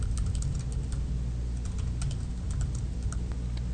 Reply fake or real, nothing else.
real